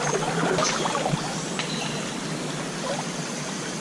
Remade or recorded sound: recorded